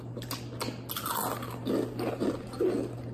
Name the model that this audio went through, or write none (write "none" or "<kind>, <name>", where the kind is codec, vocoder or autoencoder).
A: none